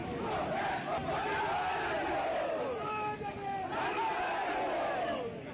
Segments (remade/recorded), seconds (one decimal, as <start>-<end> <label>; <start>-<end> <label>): 0.0-5.5 recorded